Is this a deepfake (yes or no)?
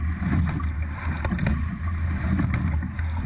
no